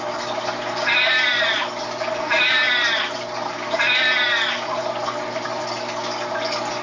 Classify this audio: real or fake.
real